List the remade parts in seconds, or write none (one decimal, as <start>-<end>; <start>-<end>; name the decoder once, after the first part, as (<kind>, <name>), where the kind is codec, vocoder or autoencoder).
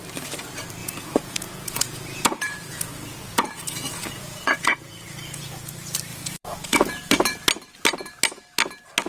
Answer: 0.8-5.6 (vocoder, Vocos); 6.1-7.1